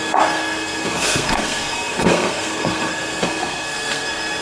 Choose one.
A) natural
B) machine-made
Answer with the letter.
B